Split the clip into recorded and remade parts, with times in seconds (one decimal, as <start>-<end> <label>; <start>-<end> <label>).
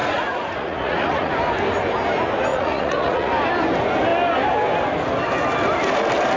0.0-1.3 remade; 1.3-2.5 recorded; 2.5-3.3 remade; 3.3-6.4 recorded